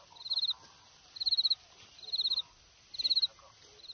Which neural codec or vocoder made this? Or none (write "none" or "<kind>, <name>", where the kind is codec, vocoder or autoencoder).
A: none